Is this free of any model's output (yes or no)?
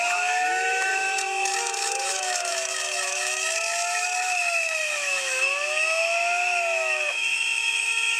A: no